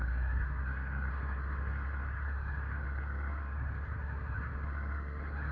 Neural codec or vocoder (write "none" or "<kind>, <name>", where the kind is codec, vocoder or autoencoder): codec, SNAC